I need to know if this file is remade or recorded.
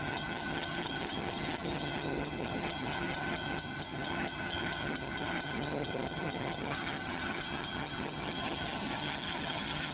remade